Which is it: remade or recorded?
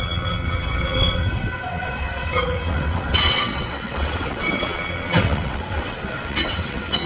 remade